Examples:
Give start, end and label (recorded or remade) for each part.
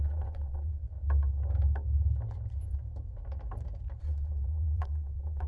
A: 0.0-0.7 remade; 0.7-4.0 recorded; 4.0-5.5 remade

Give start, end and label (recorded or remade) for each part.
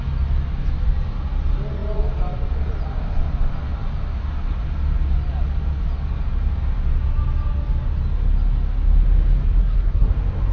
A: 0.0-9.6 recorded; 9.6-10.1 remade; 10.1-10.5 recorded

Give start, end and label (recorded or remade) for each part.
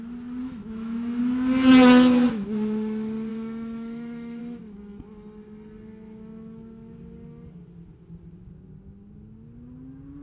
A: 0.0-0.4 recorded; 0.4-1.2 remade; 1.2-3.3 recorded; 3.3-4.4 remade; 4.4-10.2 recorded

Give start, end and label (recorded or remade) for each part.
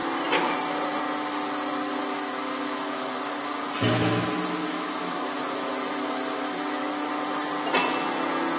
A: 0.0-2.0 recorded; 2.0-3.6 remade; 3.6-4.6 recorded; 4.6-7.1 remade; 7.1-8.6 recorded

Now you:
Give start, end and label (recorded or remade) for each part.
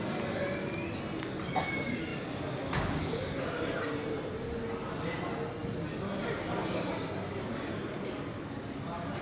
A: 0.0-2.1 recorded; 2.1-3.4 remade; 3.4-9.2 recorded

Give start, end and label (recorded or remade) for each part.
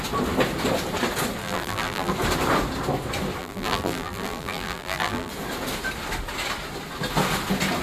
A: 0.0-1.4 recorded; 1.4-2.1 remade; 2.1-3.4 recorded; 3.4-5.3 remade; 5.3-7.8 recorded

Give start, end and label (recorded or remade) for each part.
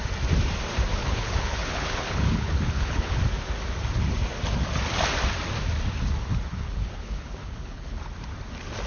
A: 0.0-1.0 recorded; 1.0-3.2 remade; 3.2-6.5 recorded; 6.5-8.0 remade; 8.0-8.9 recorded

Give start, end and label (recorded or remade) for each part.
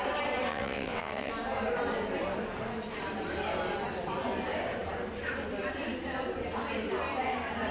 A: 0.0-0.5 recorded; 0.5-1.3 remade; 1.3-7.7 recorded